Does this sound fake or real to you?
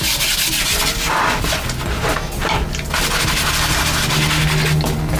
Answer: real